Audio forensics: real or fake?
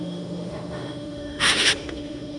fake